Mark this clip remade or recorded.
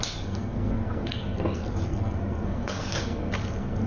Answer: remade